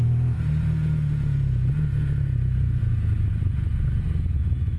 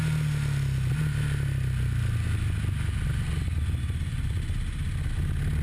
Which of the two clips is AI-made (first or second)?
first